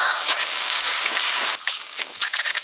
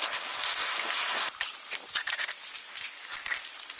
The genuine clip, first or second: second